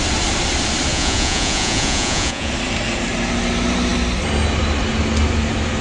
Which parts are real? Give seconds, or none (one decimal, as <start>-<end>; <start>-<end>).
0.0-0.9; 2.5-5.8